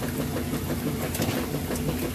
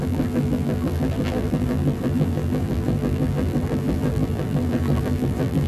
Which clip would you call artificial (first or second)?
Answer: second